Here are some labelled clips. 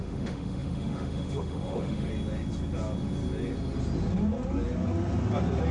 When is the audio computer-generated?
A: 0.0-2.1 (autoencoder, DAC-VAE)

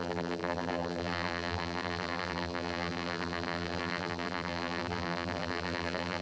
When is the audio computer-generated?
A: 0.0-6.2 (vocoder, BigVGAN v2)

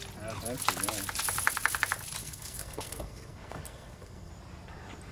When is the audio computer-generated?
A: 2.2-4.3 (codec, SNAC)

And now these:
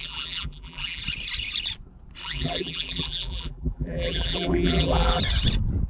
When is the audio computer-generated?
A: 0.0-1.0 (vocoder, BigVGAN v2); 2.2-5.2

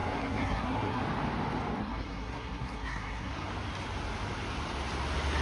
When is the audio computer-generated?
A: 0.0-1.0 (codec, SNAC); 1.8-3.5

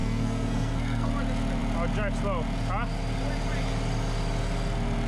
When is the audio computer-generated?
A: 0.0-1.1 (codec, SNAC)